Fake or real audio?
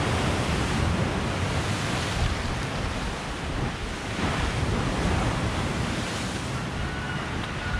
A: real